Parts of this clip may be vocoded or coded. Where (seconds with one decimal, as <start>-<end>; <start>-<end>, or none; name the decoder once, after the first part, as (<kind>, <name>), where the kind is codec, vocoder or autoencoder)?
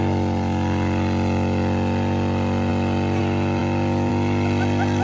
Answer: none